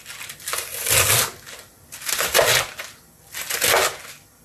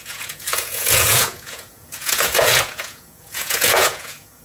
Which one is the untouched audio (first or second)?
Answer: first